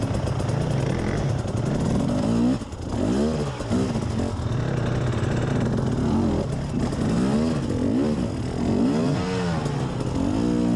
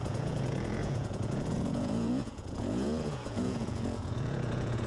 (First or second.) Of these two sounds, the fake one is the second